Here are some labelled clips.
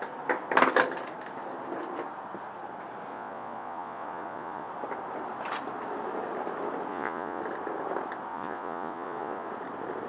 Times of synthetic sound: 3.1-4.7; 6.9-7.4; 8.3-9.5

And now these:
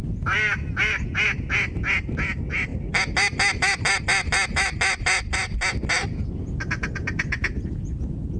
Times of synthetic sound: none

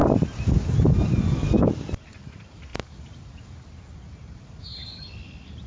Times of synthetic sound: none

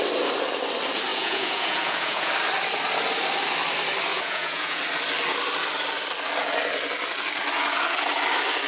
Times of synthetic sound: 1.1-2.3; 4.1-4.8

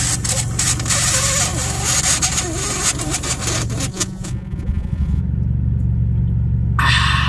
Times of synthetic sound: 3.9-5.2

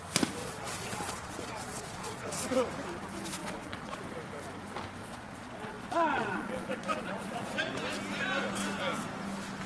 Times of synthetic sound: 0.4-2.3; 3.4-4.0; 5.0-7.7

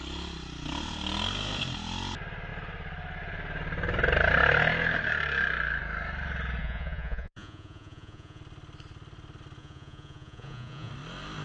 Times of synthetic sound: 6.6-8.4; 9.6-10.9

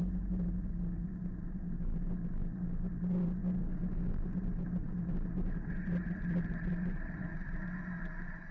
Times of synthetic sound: none